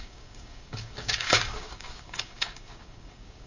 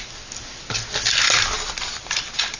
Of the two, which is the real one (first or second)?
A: second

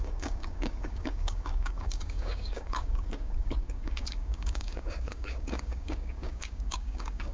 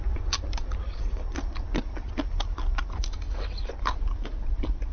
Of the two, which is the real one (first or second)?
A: second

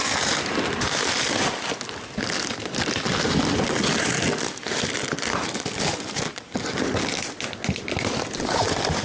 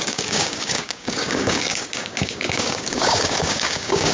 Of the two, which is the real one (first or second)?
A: first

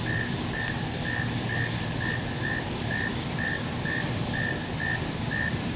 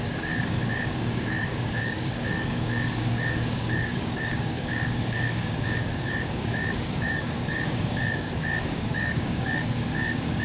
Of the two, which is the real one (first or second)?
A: first